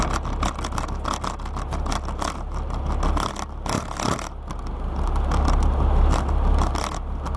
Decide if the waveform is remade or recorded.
recorded